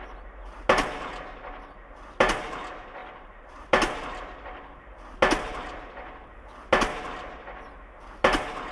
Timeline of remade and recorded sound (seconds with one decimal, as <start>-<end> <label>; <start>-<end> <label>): 0.0-3.0 recorded; 3.0-4.0 remade; 4.0-8.7 recorded